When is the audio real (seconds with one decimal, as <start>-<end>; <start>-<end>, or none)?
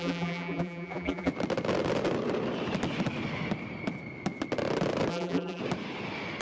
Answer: 1.3-5.1; 5.6-6.4